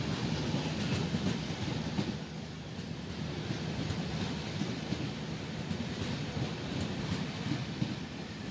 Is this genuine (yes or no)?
yes